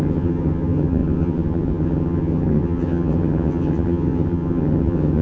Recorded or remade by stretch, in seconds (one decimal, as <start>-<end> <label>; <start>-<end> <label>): 0.0-5.2 remade